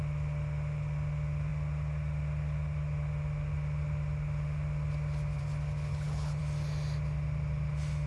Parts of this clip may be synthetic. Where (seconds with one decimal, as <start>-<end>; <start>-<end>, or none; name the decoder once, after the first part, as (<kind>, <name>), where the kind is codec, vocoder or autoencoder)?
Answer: 5.9-6.4 (codec, HILCodec)